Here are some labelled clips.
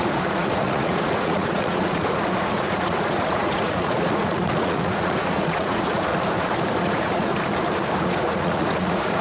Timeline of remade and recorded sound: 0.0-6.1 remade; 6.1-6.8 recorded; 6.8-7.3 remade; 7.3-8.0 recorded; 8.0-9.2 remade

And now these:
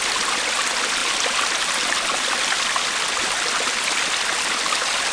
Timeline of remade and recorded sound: 0.0-5.1 recorded

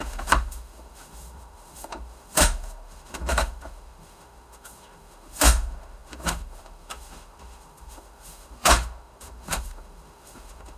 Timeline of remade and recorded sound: 0.0-10.8 remade

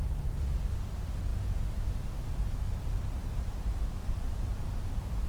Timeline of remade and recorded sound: 0.0-5.3 recorded

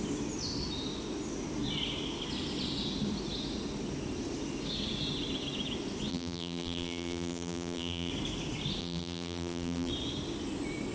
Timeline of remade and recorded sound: 0.0-6.1 recorded; 6.1-8.1 remade; 8.1-8.8 recorded; 8.8-9.9 remade; 9.9-10.9 recorded

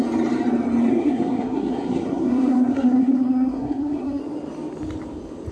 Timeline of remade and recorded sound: 0.0-0.9 recorded; 0.9-4.2 remade; 4.2-5.5 recorded